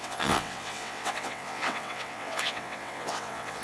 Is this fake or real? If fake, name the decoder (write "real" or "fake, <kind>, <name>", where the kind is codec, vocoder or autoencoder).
fake, vocoder, WaveNeXt